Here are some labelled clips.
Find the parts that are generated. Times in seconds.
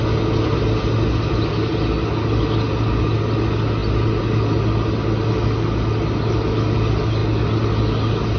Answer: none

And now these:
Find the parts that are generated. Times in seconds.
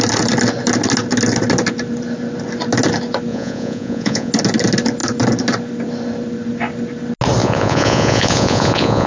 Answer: 3.3-4.3 (vocoder, Vocos); 7.4-9.1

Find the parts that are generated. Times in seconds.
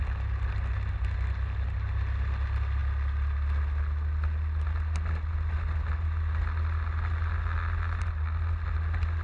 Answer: none